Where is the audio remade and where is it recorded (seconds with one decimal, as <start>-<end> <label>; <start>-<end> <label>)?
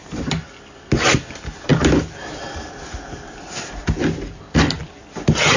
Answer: 0.0-5.6 recorded